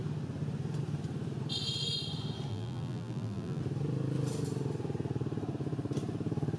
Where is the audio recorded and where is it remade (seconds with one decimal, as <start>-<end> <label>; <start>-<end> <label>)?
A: 0.0-2.5 recorded; 2.5-3.6 remade; 3.6-6.6 recorded